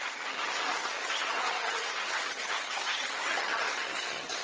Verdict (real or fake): fake